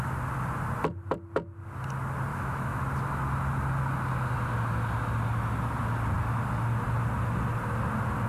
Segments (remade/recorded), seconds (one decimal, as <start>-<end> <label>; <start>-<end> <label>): 0.0-2.3 recorded; 2.3-2.8 remade; 2.8-8.3 recorded